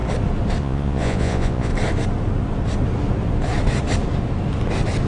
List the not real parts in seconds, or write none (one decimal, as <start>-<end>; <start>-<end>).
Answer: 0.6-1.7